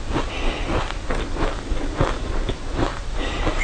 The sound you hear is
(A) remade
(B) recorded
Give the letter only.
B